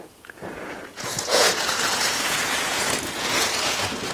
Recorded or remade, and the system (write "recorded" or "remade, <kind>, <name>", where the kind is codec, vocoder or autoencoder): remade, vocoder, Vocos